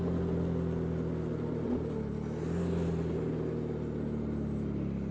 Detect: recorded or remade recorded